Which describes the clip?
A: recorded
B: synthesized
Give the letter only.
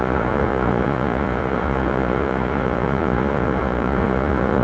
B